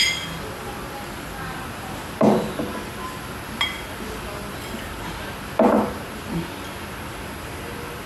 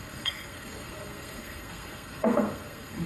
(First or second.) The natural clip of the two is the first